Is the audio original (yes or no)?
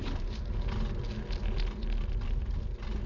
yes